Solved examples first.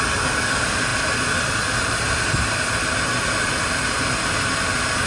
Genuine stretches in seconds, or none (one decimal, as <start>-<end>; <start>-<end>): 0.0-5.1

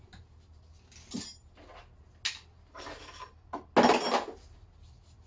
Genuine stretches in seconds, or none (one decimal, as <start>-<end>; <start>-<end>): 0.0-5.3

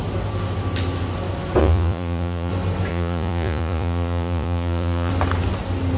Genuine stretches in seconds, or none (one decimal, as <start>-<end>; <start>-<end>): 0.0-1.6; 2.5-2.9; 5.1-6.0

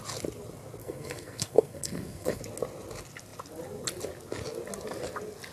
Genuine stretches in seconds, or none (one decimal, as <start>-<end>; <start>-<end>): 0.0-0.8; 2.4-5.5

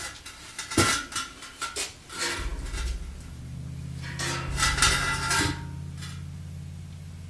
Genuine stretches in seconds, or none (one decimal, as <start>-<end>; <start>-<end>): 0.0-7.3